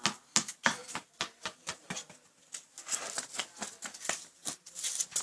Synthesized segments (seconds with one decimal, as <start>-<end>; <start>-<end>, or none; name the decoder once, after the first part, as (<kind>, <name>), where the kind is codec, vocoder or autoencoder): none